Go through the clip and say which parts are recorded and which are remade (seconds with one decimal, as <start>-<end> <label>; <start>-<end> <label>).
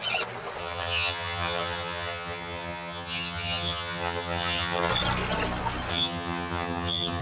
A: 0.0-0.6 recorded; 0.6-4.9 remade; 4.9-5.9 recorded; 5.9-7.2 remade